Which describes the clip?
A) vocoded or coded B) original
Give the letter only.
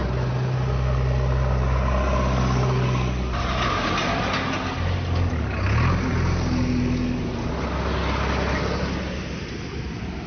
B